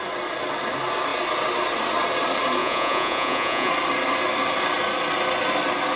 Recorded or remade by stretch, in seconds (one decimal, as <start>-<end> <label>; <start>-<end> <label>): 0.0-2.6 recorded; 2.6-3.7 remade; 3.7-6.0 recorded